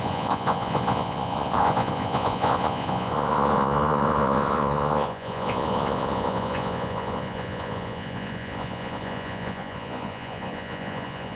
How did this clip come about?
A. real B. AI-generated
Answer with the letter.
B